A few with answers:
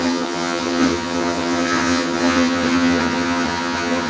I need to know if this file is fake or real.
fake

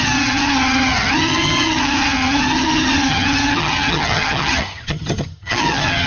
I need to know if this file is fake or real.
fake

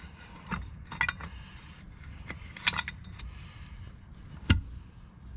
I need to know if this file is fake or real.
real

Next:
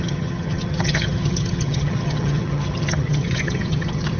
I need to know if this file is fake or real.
fake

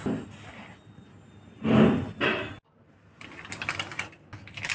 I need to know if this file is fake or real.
real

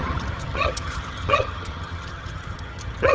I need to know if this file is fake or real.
fake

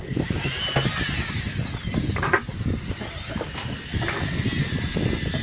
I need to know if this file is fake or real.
real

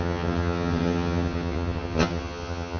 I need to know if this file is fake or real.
fake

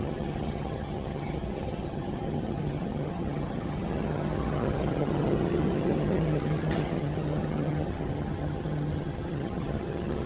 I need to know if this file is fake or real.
fake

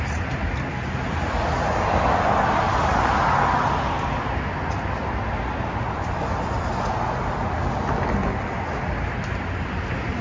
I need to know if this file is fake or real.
real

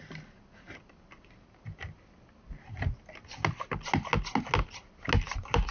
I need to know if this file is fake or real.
real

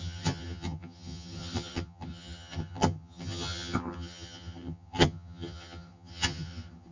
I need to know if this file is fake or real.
fake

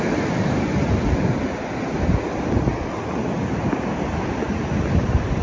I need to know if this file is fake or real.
real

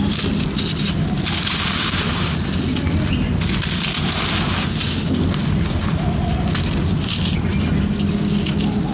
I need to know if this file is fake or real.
real